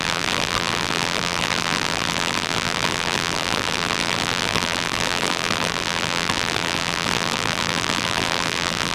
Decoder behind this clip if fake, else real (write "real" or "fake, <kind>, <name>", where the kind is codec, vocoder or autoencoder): fake, vocoder, BigVGAN v2